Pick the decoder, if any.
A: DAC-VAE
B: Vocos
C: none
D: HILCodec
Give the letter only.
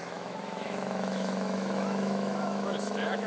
A